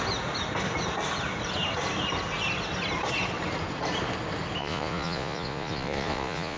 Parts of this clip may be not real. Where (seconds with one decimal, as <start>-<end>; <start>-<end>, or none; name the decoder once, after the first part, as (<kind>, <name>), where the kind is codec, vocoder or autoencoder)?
4.6-6.6 (vocoder, Vocos)